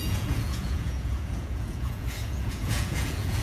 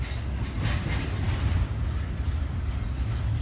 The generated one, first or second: first